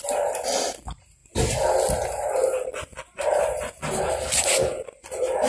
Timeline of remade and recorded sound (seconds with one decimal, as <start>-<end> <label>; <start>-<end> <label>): 0.0-5.5 recorded

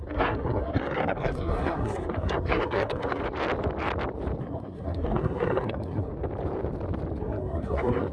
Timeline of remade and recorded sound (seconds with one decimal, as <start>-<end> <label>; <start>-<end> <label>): 0.0-3.2 remade; 3.2-4.4 recorded; 4.4-6.1 remade; 6.1-7.2 recorded; 7.2-8.1 remade